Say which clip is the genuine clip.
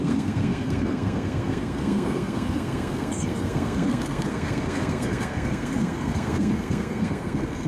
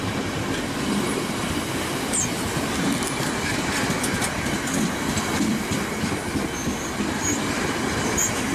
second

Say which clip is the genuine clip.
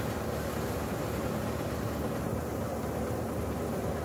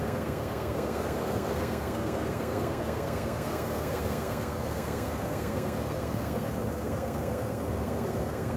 first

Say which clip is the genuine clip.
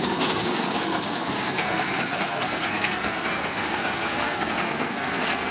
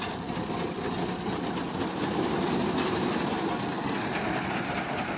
second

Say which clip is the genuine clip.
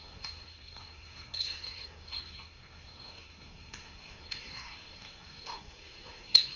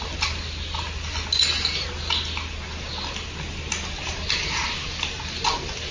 second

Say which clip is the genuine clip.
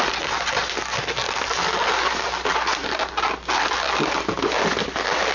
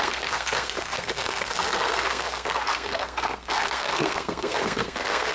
first